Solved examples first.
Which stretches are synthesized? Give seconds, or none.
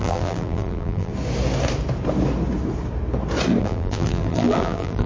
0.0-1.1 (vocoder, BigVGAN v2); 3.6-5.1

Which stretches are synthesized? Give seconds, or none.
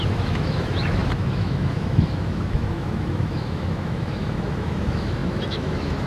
0.0-6.1 (autoencoder, DAC-VAE)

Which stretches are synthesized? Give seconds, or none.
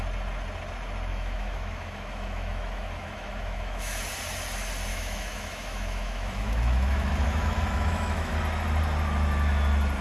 1.1-4.0 (autoencoder, DAC-VAE); 4.9-8.4